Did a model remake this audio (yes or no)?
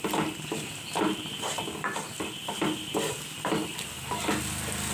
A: no